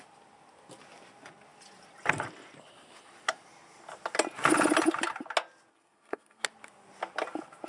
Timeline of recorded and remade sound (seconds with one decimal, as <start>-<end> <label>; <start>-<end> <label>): 0.0-5.7 recorded; 5.7-6.4 remade; 6.4-7.7 recorded